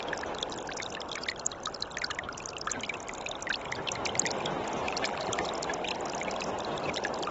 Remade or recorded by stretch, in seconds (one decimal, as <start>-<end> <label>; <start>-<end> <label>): 0.0-4.8 recorded; 4.8-5.5 remade; 5.5-7.3 recorded